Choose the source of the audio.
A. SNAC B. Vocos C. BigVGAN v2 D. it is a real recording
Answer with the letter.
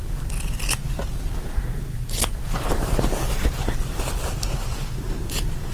C